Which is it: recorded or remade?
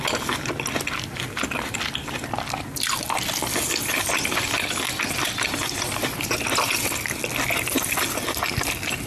recorded